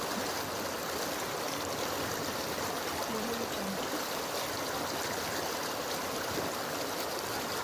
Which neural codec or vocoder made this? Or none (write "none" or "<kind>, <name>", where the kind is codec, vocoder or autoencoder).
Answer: none